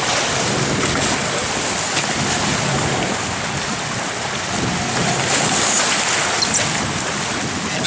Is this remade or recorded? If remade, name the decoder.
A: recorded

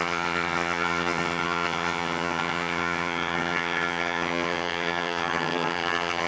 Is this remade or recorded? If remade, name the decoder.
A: remade, vocoder, HiFi-GAN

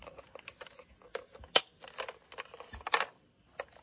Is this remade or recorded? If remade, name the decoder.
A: recorded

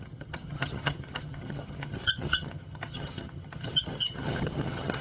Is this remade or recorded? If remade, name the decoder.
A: remade, vocoder, HiFi-GAN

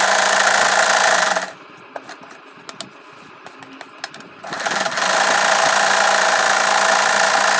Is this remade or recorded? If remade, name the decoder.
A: recorded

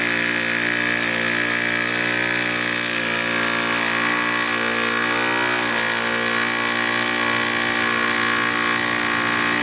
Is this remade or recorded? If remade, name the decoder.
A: recorded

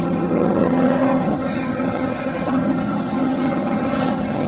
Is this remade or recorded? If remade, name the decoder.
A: remade, vocoder, HiFi-GAN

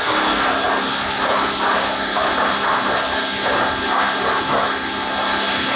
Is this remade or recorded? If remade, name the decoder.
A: recorded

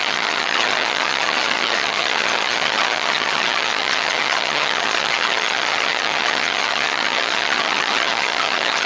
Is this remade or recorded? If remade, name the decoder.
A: remade, vocoder, HiFi-GAN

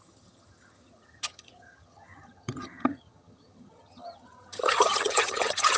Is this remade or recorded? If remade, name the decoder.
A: remade, vocoder, HiFi-GAN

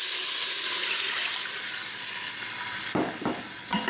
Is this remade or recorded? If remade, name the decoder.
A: recorded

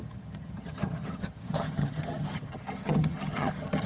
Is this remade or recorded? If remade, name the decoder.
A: remade, vocoder, HiFi-GAN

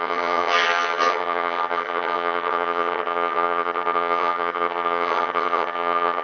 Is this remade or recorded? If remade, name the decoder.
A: remade, vocoder, HiFi-GAN